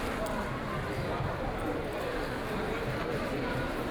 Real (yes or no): yes